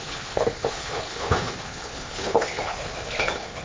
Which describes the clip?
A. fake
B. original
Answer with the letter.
A